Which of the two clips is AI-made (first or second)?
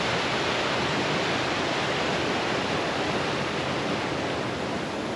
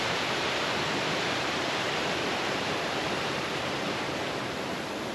second